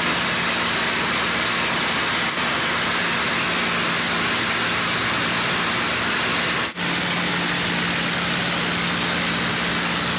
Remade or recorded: recorded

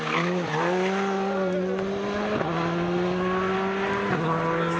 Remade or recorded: recorded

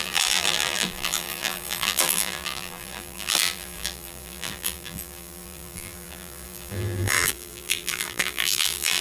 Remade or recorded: remade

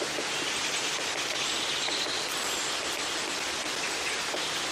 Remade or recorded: recorded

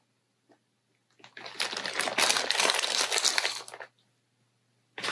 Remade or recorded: recorded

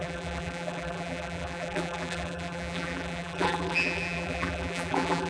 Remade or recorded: remade